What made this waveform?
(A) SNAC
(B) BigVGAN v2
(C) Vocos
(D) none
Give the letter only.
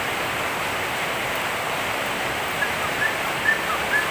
D